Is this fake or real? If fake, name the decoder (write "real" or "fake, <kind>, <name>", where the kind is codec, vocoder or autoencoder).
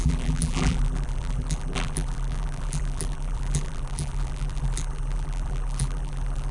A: fake, vocoder, BigVGAN v2